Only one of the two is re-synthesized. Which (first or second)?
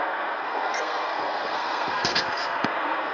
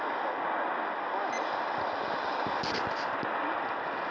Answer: first